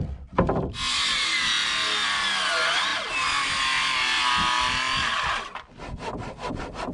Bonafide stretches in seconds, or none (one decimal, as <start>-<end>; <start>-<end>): 0.0-6.9